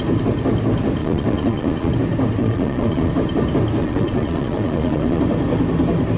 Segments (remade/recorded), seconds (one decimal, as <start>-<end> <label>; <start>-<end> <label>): 0.0-1.0 recorded; 1.0-1.9 remade; 1.9-2.4 recorded; 2.4-3.1 remade; 3.1-3.8 recorded; 3.8-5.2 remade; 5.2-6.2 recorded